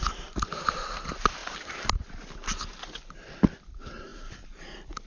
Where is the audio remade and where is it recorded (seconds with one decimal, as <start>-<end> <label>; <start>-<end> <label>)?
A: 0.0-4.1 recorded; 4.1-4.6 remade; 4.6-5.1 recorded